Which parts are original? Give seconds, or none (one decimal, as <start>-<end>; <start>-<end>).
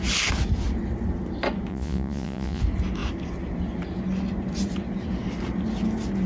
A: 0.0-1.7; 2.6-6.3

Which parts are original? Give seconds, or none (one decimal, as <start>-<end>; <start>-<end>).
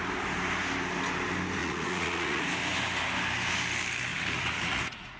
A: 0.0-1.6; 2.5-4.1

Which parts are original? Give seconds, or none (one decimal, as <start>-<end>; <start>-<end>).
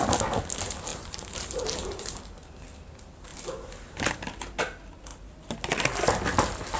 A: 0.0-0.9; 2.2-6.8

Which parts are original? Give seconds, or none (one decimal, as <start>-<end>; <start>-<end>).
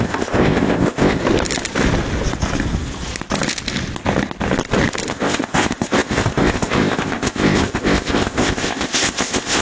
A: 1.2-5.1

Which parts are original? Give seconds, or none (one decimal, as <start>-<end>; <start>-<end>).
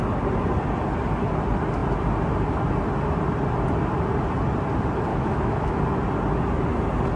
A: 0.0-5.1; 5.7-7.2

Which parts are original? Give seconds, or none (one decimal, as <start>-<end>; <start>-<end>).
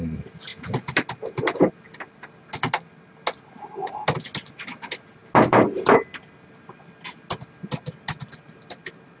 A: 0.0-9.2